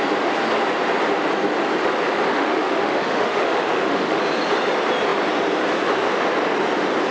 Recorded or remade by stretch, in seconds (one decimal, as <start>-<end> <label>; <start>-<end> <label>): 0.0-2.3 recorded; 2.3-4.2 remade; 4.2-7.1 recorded